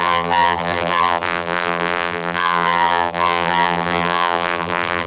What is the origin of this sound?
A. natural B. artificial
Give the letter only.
B